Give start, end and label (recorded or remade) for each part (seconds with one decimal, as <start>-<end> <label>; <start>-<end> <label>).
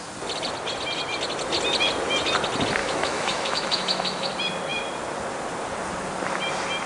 0.0-2.8 recorded; 2.8-4.3 remade; 4.3-6.9 recorded